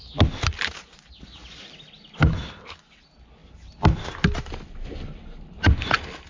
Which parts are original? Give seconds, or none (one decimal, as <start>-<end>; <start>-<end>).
0.0-6.3

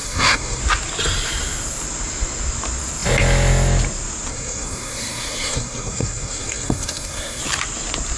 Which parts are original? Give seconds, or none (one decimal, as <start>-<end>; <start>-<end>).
0.6-4.3; 7.4-8.2